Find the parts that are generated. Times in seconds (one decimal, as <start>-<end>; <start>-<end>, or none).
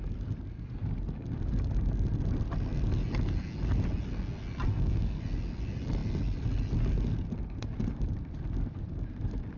4.7-5.2